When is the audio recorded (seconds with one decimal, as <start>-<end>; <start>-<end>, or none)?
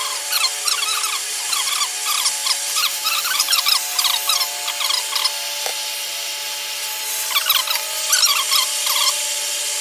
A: 1.6-2.4; 3.7-5.7; 7.0-9.8